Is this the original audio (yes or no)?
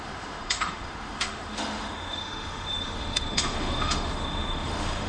no